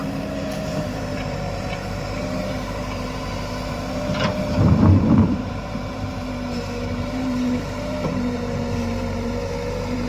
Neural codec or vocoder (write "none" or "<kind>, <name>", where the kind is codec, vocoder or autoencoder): vocoder, BigVGAN v2